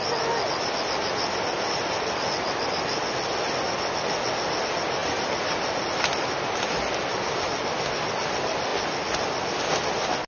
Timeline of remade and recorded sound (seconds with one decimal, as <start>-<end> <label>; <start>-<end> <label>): 0.0-10.3 recorded